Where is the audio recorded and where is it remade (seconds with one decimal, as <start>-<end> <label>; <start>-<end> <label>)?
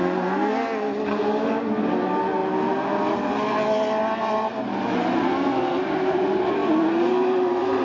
0.0-7.8 recorded